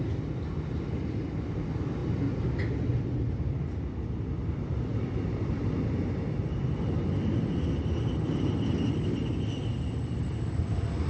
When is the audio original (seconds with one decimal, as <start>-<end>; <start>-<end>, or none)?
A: 0.0-11.1